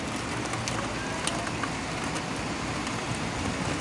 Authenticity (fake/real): real